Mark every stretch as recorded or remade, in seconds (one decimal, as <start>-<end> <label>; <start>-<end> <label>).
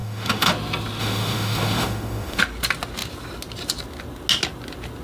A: 0.0-0.5 remade; 0.5-1.0 recorded; 1.0-2.4 remade; 2.4-5.0 recorded